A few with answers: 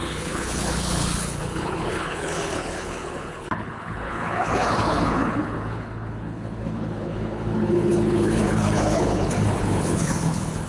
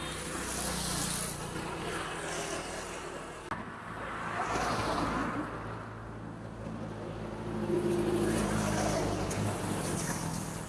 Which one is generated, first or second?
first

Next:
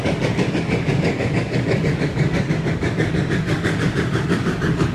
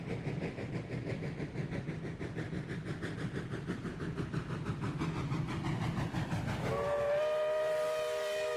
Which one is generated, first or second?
first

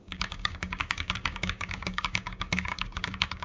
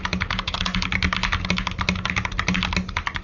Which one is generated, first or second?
first